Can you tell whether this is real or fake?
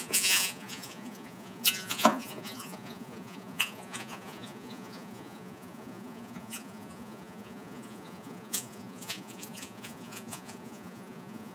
fake